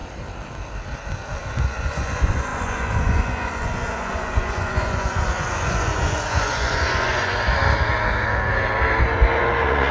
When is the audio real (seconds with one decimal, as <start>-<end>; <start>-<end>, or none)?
0.0-1.5; 7.6-9.0